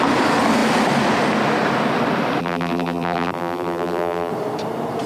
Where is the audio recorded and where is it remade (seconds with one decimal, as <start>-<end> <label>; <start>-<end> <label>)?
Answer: 0.0-2.4 recorded; 2.4-4.3 remade; 4.3-5.1 recorded